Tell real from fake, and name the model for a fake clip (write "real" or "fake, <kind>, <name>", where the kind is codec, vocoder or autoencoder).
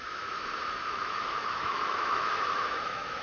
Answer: fake, autoencoder, DAC-VAE